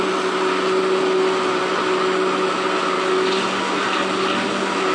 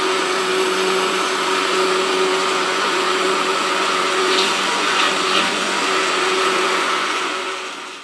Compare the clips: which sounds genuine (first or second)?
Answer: first